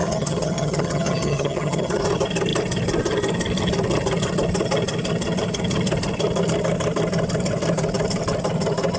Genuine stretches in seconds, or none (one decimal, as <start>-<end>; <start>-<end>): 2.0-9.0